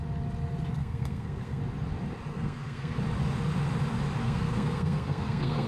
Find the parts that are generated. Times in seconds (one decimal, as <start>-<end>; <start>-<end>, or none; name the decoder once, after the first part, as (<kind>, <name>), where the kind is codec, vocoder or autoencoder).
0.7-1.6 (codec, SNAC); 2.3-3.0; 4.2-5.7